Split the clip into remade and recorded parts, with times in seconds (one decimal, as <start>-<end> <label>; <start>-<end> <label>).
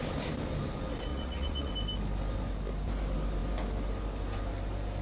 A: 0.0-1.1 recorded; 1.1-1.7 remade; 1.7-5.0 recorded